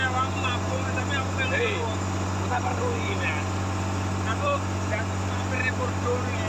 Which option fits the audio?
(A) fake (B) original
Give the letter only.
B